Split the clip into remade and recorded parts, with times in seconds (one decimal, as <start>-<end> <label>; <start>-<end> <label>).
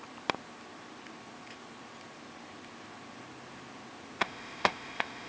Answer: 0.0-4.2 recorded; 4.2-5.3 remade